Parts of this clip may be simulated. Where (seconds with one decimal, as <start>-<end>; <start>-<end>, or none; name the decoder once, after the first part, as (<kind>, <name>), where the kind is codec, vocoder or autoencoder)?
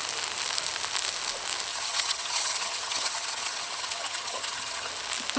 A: 1.7-4.9 (vocoder, HiFi-GAN)